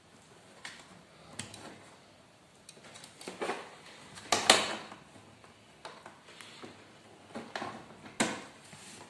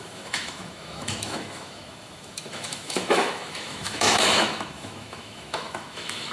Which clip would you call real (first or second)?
first